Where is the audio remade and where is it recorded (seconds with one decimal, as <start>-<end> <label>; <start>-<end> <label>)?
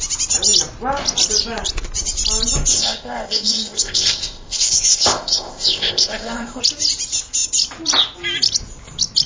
0.0-2.7 recorded; 2.7-6.6 remade; 6.6-9.3 recorded